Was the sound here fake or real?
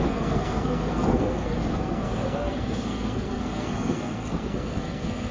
fake